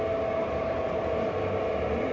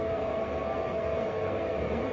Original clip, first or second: first